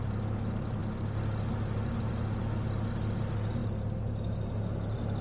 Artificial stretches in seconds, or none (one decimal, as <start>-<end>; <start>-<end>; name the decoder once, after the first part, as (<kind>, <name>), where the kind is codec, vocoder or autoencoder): none